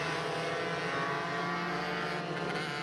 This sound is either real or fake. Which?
real